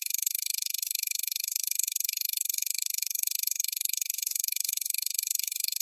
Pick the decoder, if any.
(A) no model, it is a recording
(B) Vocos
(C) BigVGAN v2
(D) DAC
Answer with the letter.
D